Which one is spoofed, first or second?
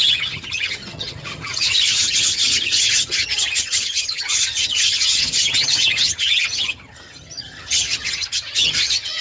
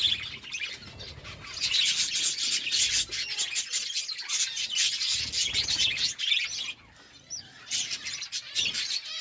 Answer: first